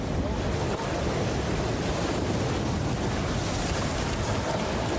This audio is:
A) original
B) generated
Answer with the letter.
A